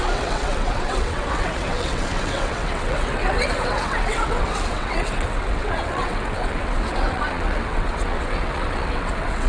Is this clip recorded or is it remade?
remade